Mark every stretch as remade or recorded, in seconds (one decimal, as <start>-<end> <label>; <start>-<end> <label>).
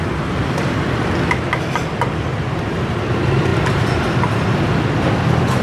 0.0-5.6 recorded